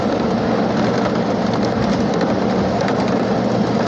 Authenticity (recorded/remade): recorded